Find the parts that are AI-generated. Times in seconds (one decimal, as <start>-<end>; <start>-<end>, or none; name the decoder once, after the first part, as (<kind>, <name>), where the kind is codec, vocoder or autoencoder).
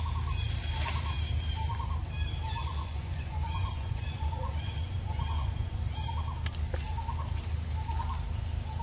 2.6-6.1 (vocoder, Vocos)